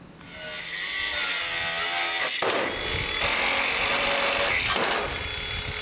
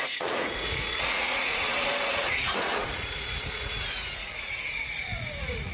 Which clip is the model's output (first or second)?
second